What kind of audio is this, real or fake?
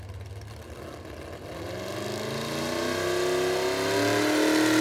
real